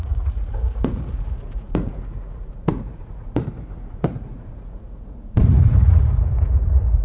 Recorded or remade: remade